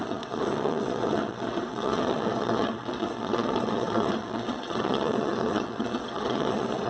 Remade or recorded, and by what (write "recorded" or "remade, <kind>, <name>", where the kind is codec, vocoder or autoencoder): remade, vocoder, WaveNeXt